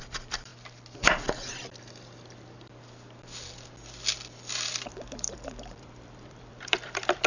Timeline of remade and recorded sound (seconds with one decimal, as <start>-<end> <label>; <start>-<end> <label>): 0.0-0.5 remade; 0.5-4.9 recorded; 4.9-7.3 remade